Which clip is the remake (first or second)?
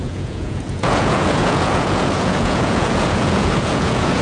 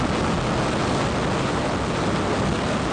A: first